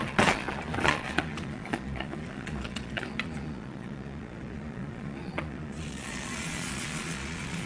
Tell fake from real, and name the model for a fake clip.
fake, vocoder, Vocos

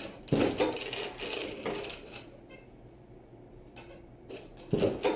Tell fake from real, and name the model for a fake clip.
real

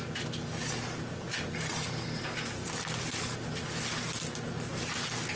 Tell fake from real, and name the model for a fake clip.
real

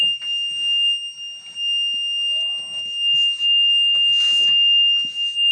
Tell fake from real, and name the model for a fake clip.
real